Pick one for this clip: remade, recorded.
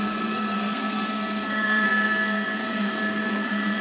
remade